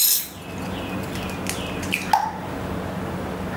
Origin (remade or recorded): recorded